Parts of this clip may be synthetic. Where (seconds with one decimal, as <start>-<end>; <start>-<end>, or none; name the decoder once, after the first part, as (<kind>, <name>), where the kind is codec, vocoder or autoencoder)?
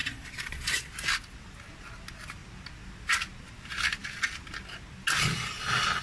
0.0-0.9 (vocoder, Vocos)